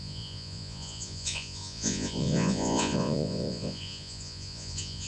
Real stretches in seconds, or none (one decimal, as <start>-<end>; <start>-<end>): none